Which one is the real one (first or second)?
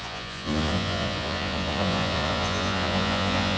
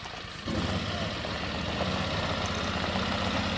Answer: second